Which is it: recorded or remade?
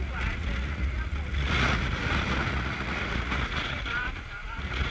remade